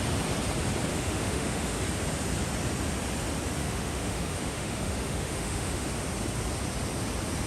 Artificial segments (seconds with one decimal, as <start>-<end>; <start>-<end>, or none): 0.9-1.8; 3.6-5.9